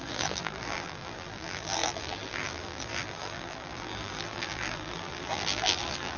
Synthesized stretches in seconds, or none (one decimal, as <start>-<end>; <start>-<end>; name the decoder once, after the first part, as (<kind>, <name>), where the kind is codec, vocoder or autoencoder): 0.0-6.2 (vocoder, BigVGAN v2)